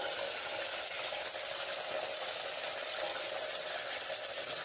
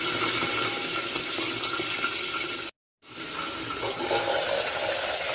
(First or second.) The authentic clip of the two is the second